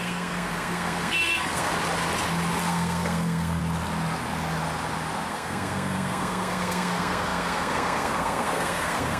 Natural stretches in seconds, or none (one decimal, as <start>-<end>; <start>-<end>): 1.7-2.6; 3.6-5.3